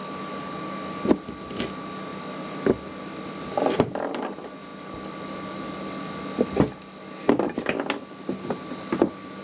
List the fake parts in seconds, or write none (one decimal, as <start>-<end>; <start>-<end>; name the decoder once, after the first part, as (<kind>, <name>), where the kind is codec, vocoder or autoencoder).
none